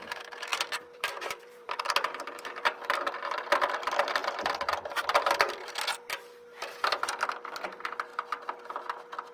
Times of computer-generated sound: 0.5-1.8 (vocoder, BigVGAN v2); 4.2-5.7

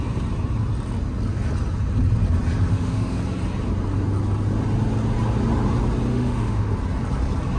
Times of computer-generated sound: 2.7-3.2 (autoencoder, DAC-VAE); 6.1-6.7

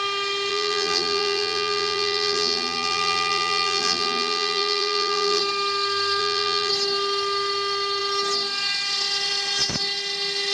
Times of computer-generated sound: 0.5-5.4 (vocoder, BigVGAN v2); 6.2-6.7

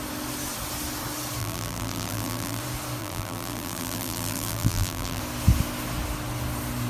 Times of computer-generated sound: 1.4-2.6 (vocoder, BigVGAN v2); 3.0-5.2

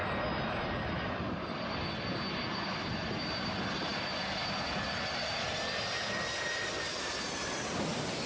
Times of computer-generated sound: none

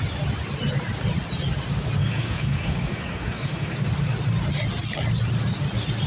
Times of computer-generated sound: 2.0-3.8 (codec, DAC)

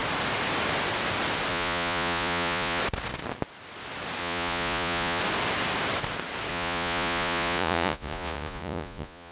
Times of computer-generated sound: 1.5-2.8 (vocoder, Vocos); 4.2-5.2; 6.5-9.3

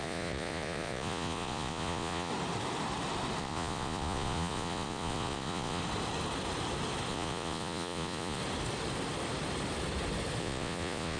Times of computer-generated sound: 0.0-2.3 (vocoder, Vocos); 3.4-5.8; 7.1-8.4; 10.4-11.2